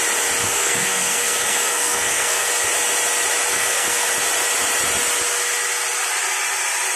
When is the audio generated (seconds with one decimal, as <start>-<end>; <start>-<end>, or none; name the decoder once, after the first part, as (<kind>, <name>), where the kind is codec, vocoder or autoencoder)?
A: 0.4-2.5 (codec, SNAC); 3.5-4.1